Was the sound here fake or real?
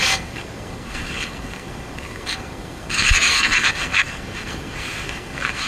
fake